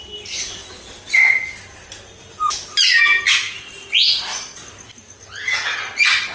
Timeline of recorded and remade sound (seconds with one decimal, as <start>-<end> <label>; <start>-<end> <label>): 0.0-6.3 recorded